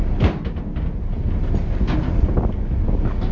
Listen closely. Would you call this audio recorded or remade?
recorded